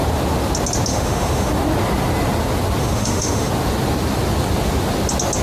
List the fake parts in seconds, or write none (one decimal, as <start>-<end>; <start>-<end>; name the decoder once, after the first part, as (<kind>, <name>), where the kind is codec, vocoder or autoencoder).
0.9-1.5 (autoencoder, DAC-VAE); 2.8-3.5